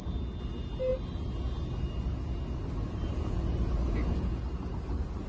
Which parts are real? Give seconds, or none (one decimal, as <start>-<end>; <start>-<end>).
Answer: 0.0-3.0; 4.4-5.3